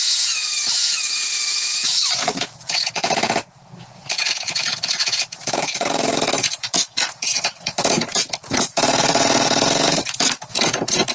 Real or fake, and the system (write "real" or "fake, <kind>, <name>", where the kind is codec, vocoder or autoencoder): fake, vocoder, Vocos